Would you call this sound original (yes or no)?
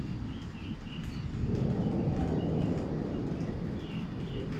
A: yes